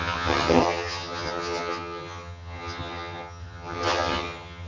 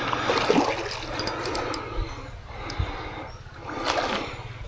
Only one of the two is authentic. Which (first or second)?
second